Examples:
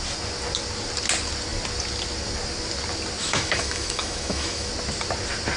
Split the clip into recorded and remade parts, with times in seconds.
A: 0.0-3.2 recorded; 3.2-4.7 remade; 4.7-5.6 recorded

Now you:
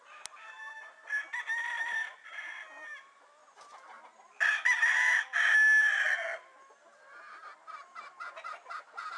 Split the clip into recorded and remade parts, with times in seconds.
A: 0.0-9.2 recorded